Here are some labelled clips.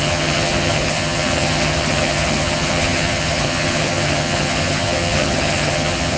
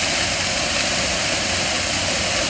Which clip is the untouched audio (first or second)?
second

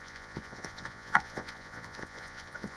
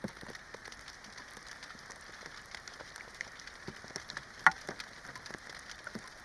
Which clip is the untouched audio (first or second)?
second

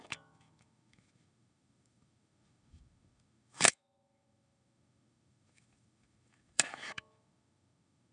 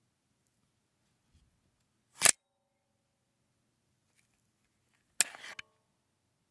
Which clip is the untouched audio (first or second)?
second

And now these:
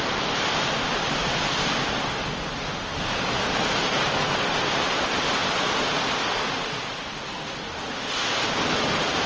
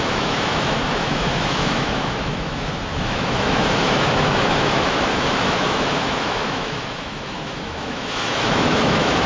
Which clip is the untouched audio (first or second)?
first